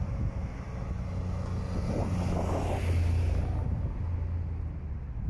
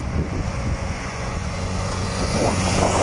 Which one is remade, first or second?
second